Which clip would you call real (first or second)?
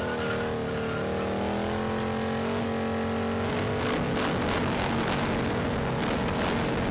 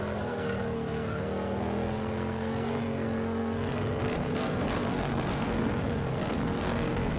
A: first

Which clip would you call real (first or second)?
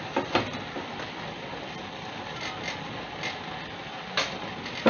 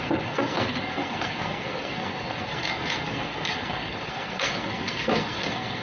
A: first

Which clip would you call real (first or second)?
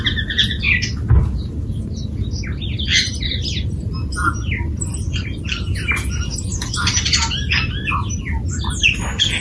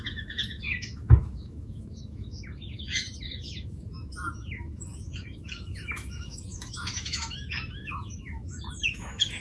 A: first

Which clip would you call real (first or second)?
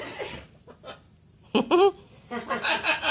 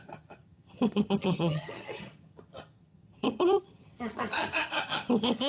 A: first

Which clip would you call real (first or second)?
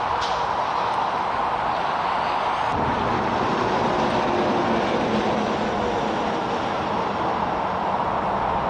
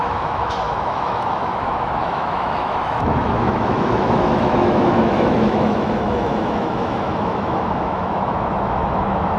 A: first